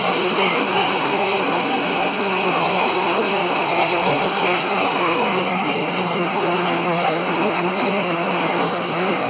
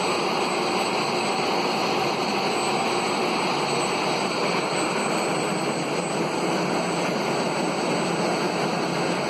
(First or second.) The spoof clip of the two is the first